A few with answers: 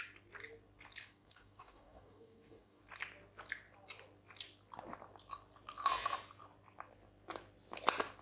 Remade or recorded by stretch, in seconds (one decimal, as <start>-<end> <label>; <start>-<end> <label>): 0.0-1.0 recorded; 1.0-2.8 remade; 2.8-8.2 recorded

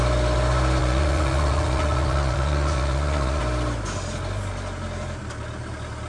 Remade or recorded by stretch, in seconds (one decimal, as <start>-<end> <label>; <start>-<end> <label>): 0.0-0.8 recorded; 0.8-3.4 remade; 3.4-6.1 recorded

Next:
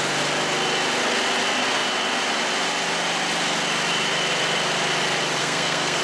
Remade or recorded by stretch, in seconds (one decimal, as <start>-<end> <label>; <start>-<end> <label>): 0.0-5.4 recorded; 5.4-6.0 remade

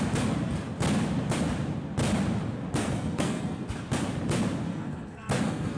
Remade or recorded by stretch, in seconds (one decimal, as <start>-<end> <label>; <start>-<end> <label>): 0.0-2.8 recorded; 2.8-3.7 remade; 3.7-4.7 recorded; 4.7-5.8 remade

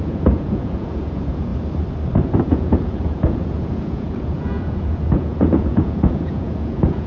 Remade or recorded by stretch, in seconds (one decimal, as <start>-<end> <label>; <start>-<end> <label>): 0.0-1.5 remade; 1.5-2.4 recorded; 2.4-7.1 remade